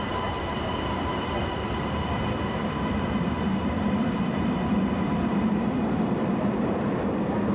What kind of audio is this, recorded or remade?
remade